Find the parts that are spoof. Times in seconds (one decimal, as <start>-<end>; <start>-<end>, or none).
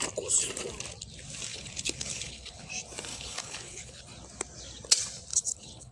1.5-2.7; 3.1-4.0; 5.3-5.9